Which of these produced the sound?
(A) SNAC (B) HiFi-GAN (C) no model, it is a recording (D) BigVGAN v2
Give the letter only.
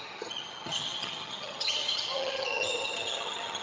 B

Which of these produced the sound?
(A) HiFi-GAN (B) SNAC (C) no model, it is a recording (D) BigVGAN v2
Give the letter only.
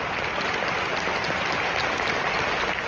C